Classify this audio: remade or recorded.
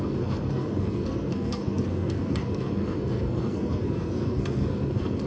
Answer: remade